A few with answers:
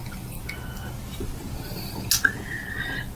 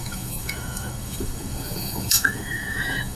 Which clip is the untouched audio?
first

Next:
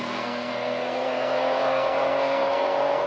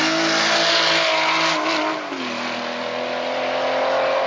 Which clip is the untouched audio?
second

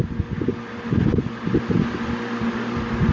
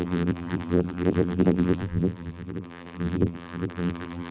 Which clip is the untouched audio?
first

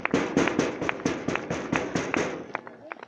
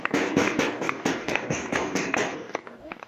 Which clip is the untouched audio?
first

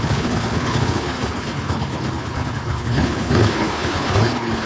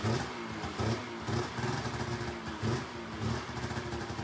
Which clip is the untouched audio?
second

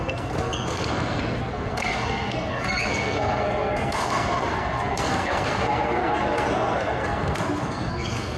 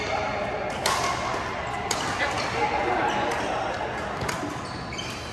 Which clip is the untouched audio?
second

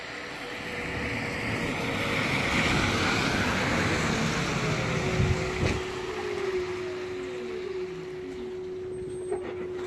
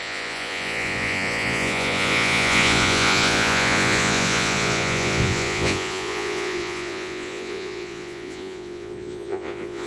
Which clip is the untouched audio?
first